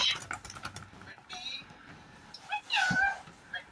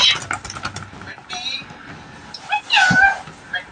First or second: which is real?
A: second